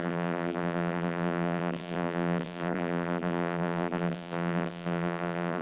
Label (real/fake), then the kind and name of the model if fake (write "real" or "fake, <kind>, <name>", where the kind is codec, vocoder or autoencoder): fake, vocoder, BigVGAN v2